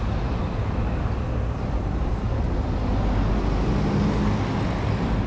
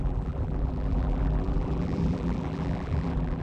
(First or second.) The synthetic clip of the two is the second